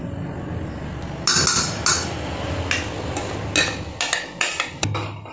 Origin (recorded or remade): recorded